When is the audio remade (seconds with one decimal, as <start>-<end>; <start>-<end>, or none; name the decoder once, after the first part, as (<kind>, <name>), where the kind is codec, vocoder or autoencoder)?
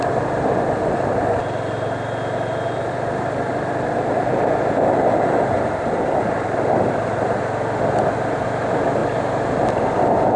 none